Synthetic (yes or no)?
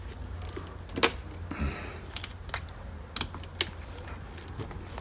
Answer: no